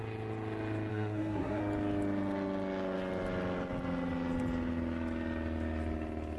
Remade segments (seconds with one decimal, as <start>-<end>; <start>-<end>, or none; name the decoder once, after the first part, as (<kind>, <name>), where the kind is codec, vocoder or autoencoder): 0.9-1.6 (codec, SNAC)